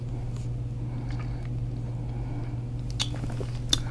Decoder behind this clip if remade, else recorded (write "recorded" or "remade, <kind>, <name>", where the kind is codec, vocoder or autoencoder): recorded